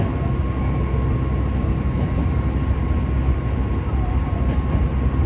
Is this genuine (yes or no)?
yes